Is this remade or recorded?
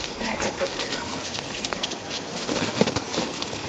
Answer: remade